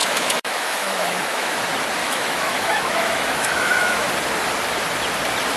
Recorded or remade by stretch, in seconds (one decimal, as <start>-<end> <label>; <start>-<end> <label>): 0.0-1.6 remade; 1.6-2.0 recorded; 2.0-4.1 remade; 4.1-5.6 recorded